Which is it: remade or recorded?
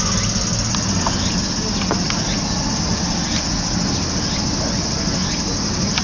recorded